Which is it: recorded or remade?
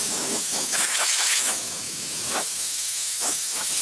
remade